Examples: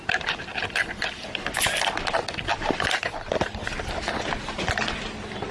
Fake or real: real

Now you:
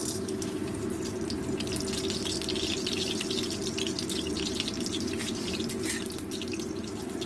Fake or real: real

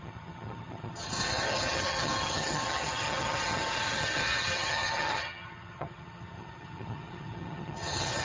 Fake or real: fake